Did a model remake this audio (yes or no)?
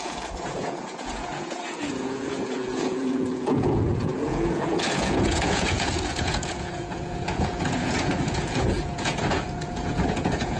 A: yes